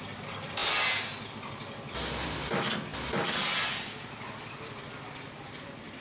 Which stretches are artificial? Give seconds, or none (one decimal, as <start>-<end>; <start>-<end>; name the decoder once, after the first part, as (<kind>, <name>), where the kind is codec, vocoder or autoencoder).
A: 0.0-0.6 (vocoder, BigVGAN v2); 1.3-6.0